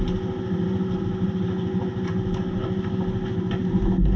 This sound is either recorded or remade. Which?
recorded